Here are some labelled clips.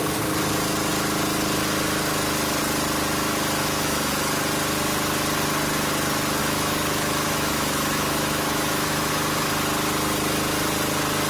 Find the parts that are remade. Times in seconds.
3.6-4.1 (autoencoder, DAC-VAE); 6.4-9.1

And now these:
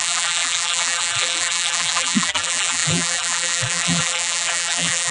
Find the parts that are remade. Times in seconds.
0.0-5.1 (vocoder, BigVGAN v2)